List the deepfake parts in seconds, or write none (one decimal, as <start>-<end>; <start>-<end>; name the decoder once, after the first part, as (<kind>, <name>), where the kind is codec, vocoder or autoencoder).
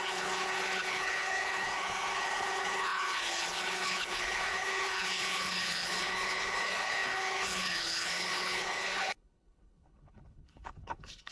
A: 0.0-11.3 (codec, HILCodec)